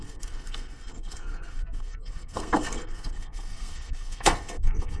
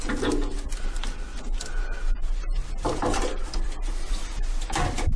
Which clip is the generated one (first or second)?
first